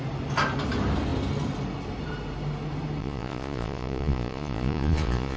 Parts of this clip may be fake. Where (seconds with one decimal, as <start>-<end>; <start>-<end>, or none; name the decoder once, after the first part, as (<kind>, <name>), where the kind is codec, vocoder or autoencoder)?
3.0-5.4 (vocoder, Vocos)